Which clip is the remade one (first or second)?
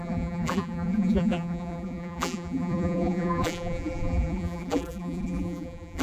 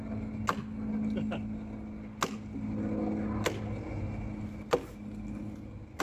first